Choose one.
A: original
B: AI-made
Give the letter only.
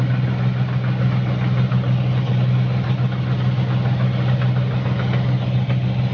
A